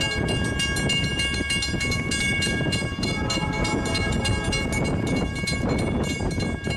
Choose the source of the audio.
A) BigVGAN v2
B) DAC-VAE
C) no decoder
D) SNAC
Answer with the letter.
C